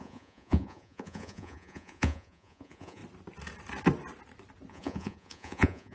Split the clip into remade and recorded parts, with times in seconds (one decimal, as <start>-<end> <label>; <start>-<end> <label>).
0.0-3.0 remade; 3.0-4.7 recorded; 4.7-5.9 remade